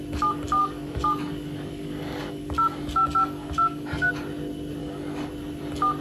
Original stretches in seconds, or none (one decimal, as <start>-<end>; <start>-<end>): 0.0-0.6; 4.1-4.8; 5.3-6.0